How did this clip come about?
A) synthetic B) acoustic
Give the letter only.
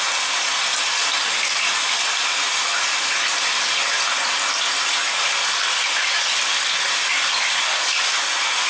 B